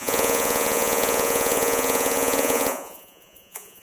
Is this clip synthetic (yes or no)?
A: yes